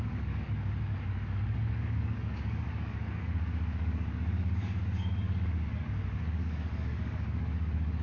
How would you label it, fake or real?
fake